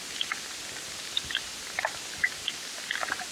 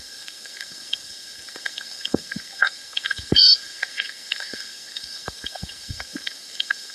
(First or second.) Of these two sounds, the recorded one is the first